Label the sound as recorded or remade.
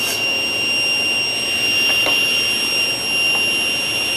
recorded